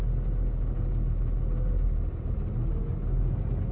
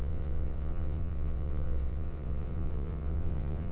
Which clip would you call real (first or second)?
first